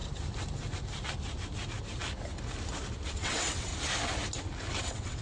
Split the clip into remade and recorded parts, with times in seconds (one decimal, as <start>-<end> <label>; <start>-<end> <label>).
0.0-3.1 recorded; 3.1-3.7 remade; 3.7-4.8 recorded; 4.8-5.2 remade